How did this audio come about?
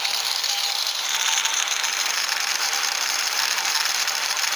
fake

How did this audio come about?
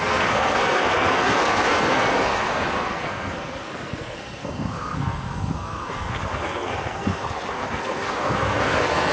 fake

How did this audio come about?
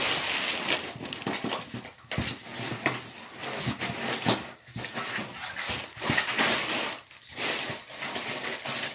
real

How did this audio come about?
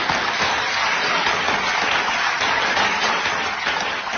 real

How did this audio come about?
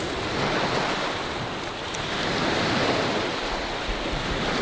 real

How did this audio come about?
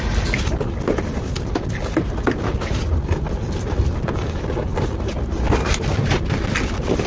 real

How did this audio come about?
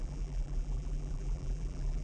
fake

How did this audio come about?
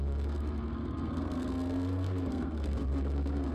fake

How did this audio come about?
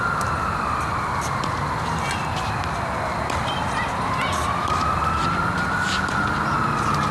real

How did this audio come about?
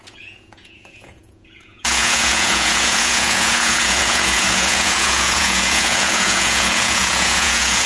fake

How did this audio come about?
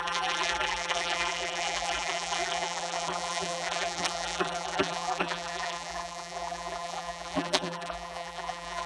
fake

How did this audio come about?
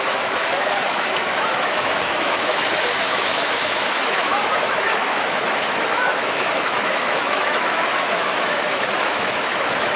fake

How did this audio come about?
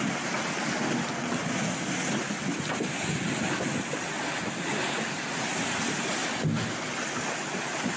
real